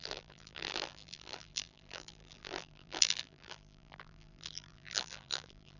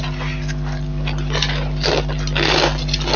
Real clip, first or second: second